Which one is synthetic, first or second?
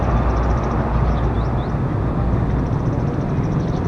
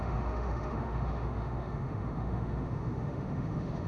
second